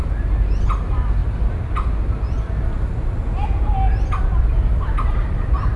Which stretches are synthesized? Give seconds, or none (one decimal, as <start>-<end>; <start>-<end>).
none